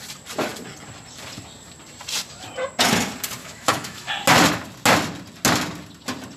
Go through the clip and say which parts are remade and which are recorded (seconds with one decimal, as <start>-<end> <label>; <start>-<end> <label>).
0.0-3.4 recorded; 3.4-4.1 remade; 4.1-6.4 recorded